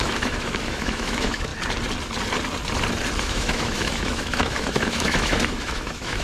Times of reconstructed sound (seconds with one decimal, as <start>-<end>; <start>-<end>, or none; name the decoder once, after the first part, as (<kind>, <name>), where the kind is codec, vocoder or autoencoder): 0.0-1.5 (autoencoder, DAC-VAE); 3.2-6.2